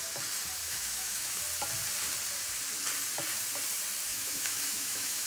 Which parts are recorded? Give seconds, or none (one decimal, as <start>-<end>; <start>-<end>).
0.0-0.6; 1.4-4.1